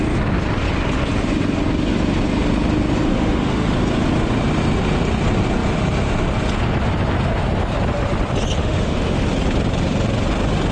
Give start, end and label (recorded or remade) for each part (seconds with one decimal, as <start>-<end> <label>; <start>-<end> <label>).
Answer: 0.0-3.1 recorded; 3.1-3.7 remade; 3.7-8.6 recorded; 8.6-9.2 remade; 9.2-10.7 recorded